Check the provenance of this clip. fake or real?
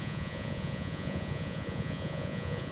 fake